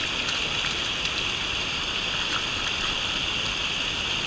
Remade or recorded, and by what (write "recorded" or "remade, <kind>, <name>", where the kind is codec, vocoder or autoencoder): recorded